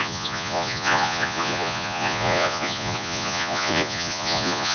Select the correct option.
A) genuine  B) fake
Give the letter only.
B